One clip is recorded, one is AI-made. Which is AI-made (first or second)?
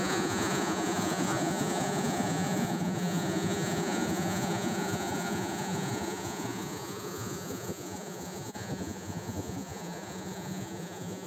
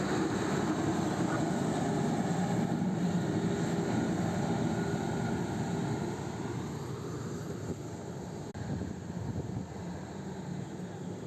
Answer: first